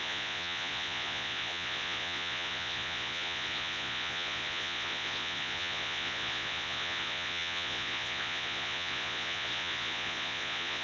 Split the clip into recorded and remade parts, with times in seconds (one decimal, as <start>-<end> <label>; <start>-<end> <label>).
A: 0.0-10.8 remade